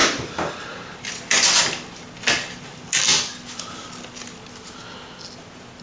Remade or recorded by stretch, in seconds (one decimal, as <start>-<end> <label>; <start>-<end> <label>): 0.0-5.8 recorded